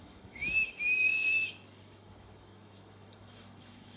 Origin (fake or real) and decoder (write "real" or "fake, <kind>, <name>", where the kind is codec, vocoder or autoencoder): fake, autoencoder, DAC-VAE